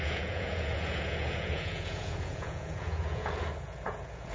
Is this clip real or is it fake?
fake